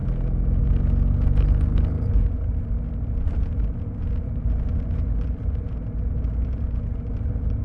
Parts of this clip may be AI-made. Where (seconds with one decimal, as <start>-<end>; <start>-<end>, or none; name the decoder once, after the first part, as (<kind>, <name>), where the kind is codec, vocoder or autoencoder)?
none